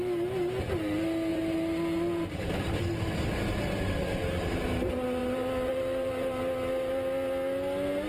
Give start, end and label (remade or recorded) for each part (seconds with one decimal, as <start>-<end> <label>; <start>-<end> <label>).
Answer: 0.0-1.3 recorded; 1.3-2.8 remade; 2.8-5.2 recorded; 5.2-6.4 remade; 6.4-8.1 recorded